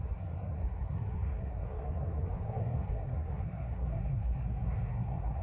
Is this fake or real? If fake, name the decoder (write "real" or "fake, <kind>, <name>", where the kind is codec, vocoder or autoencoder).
fake, codec, SNAC